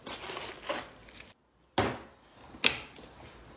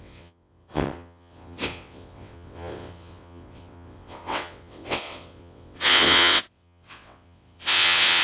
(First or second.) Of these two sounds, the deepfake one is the second